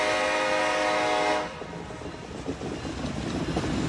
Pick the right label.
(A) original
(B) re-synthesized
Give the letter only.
A